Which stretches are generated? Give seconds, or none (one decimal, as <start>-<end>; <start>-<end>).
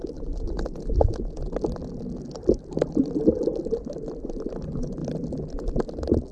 none